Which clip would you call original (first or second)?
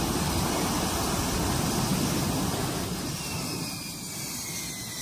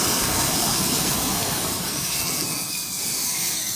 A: first